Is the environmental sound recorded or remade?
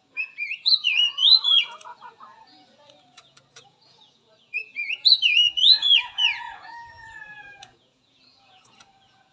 remade